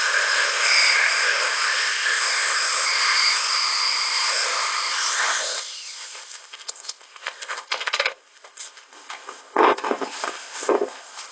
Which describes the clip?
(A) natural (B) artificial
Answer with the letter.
B